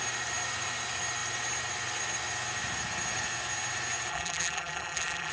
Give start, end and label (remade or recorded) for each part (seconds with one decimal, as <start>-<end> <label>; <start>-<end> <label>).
0.0-4.1 recorded; 4.1-5.3 remade